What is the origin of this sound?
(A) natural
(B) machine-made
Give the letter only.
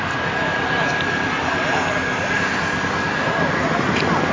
A